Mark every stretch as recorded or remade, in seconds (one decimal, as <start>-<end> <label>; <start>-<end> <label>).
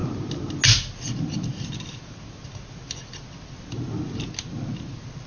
0.0-5.3 recorded